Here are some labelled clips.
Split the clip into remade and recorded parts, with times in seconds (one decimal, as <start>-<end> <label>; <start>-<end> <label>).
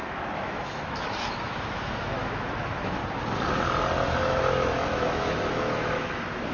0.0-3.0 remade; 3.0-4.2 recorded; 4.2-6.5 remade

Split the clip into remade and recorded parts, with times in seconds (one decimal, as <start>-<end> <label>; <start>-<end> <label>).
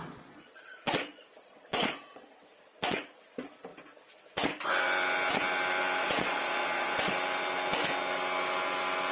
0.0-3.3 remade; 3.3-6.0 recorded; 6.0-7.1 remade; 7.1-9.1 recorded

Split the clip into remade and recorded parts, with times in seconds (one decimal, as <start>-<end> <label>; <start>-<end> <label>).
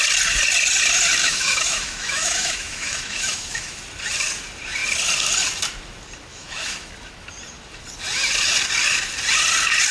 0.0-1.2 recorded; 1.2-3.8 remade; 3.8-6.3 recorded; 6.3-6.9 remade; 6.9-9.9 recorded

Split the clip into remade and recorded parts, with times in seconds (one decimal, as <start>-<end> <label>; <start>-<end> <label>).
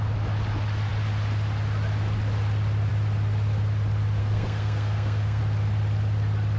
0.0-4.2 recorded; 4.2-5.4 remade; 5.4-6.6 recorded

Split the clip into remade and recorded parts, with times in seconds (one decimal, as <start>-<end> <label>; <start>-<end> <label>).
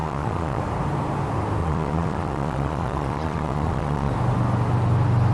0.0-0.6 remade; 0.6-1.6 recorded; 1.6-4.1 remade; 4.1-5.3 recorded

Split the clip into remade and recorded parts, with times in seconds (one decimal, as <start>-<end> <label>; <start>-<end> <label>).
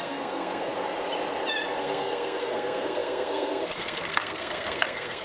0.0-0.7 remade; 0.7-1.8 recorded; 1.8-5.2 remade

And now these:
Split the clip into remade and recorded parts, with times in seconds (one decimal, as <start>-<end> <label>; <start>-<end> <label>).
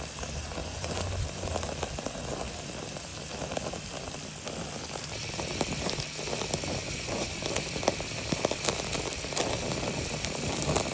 0.0-0.6 recorded; 0.6-1.5 remade; 1.5-6.8 recorded; 6.8-7.3 remade; 7.3-10.9 recorded